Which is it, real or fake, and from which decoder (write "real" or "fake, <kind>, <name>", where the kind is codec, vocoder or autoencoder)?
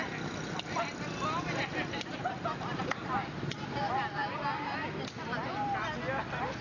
real